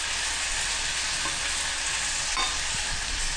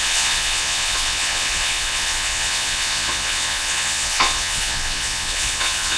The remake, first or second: second